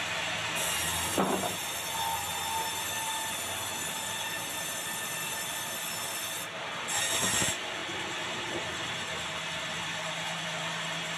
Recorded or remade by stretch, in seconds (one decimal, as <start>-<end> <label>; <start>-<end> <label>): 0.0-11.2 recorded